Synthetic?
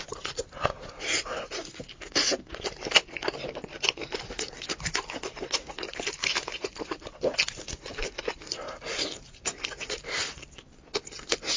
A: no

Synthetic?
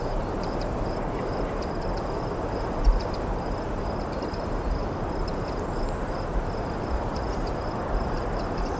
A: yes